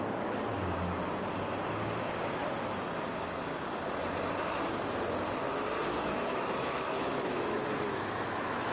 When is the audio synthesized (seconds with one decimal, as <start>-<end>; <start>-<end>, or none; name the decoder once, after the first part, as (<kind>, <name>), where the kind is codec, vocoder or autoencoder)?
6.3-8.7 (autoencoder, DAC-VAE)